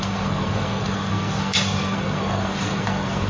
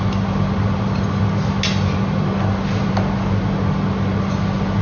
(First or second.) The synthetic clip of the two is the first